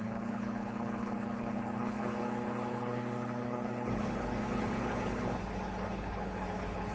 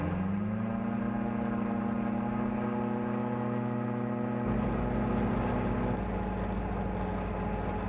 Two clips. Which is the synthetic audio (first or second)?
first